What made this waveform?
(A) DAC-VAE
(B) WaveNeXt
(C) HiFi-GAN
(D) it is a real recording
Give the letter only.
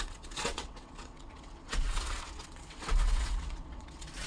B